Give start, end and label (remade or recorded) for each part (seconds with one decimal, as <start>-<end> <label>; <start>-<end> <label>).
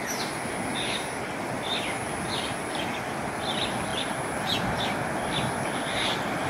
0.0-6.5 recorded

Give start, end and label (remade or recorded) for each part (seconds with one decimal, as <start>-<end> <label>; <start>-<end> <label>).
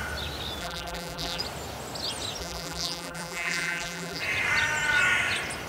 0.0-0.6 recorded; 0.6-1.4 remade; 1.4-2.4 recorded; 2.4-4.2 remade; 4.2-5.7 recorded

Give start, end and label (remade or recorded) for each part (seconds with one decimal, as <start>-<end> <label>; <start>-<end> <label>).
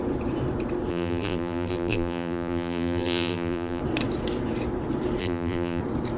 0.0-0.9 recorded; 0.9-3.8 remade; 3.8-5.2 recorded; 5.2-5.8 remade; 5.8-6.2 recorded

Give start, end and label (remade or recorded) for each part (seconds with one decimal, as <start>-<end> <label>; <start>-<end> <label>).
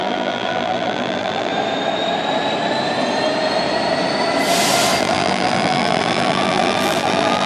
0.0-1.5 remade; 1.5-5.0 recorded; 5.0-7.5 remade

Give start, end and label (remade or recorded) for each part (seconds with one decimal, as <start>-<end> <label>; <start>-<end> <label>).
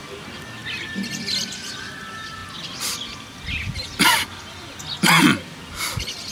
0.0-6.3 recorded